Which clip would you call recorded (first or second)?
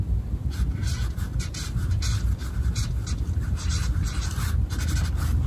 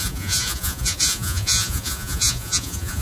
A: first